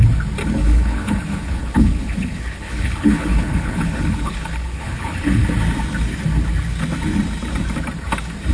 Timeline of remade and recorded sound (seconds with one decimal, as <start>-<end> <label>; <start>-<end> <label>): 0.0-0.4 recorded; 0.4-5.4 remade; 5.4-8.5 recorded